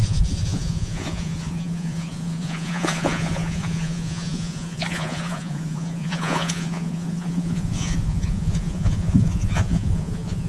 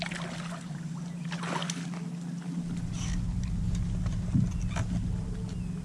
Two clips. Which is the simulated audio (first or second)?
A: first